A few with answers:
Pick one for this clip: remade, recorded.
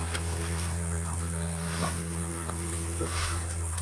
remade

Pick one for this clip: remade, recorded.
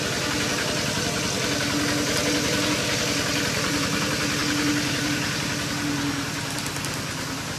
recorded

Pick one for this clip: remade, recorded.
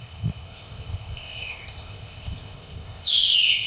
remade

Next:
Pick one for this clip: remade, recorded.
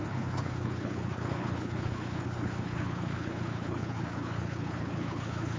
remade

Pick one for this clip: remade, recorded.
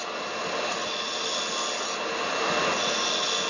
recorded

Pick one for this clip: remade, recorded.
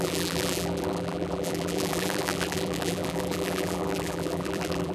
remade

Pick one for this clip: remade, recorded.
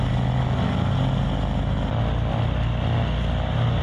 recorded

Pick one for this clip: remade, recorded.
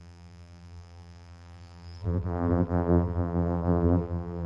remade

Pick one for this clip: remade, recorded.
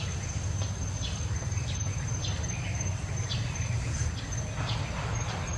remade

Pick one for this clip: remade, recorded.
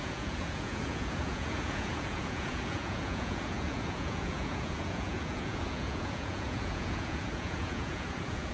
remade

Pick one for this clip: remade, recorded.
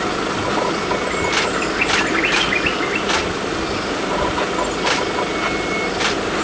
recorded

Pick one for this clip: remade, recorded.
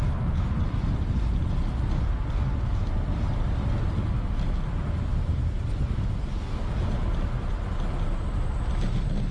recorded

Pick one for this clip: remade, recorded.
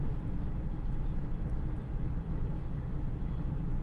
recorded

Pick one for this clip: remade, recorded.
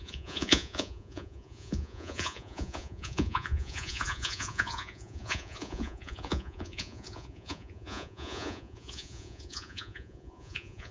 remade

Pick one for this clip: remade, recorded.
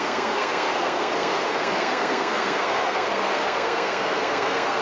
remade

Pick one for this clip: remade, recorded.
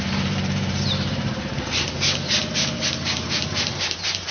remade